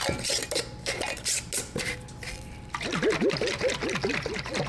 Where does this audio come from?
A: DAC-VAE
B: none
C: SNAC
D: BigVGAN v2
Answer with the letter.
B